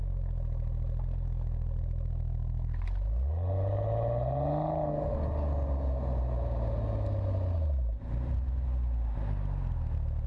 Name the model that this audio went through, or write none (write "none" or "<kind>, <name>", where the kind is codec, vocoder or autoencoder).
none